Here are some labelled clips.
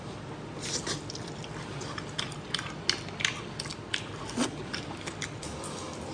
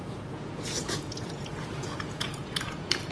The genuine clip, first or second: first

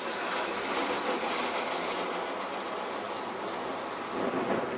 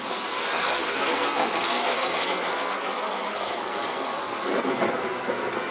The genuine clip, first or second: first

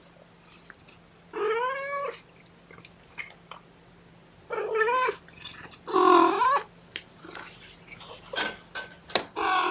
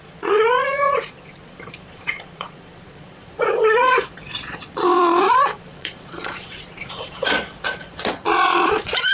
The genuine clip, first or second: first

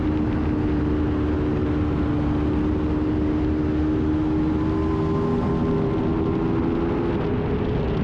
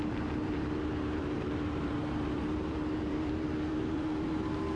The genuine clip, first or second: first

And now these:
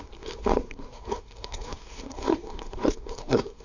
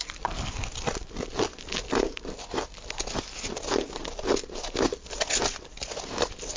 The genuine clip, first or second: second